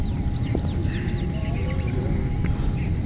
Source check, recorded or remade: recorded